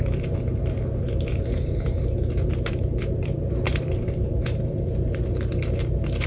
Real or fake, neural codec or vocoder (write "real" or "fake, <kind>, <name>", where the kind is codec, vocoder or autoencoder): fake, vocoder, BigVGAN v2